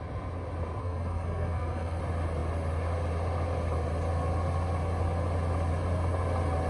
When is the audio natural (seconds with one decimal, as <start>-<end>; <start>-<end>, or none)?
0.0-0.8; 2.0-6.7